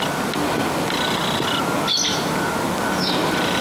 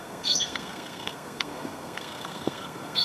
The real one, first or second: first